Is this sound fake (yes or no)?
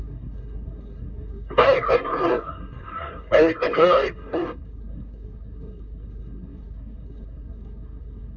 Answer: yes